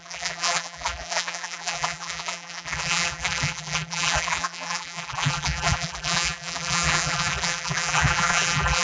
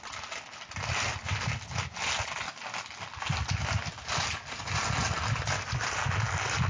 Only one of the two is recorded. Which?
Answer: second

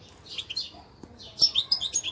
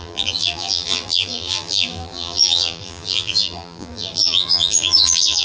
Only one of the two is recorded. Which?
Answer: first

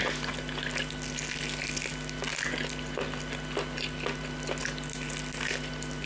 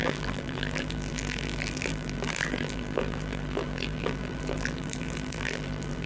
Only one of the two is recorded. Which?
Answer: first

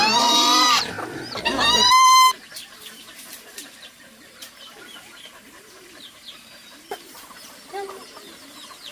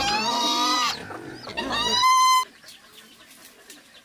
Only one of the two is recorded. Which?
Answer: second